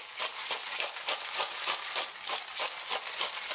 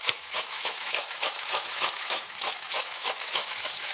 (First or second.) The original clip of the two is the first